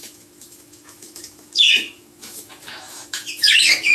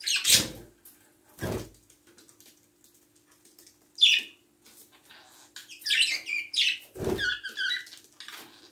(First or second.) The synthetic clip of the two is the first